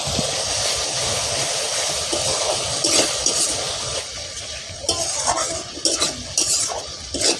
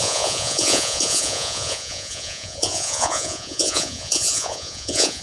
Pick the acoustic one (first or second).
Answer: first